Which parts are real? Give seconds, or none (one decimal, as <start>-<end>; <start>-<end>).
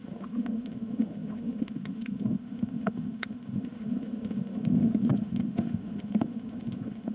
none